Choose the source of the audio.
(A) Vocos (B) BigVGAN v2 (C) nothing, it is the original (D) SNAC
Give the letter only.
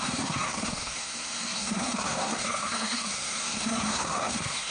D